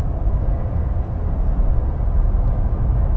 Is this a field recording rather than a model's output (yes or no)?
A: yes